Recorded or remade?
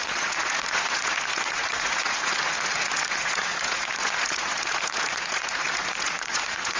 remade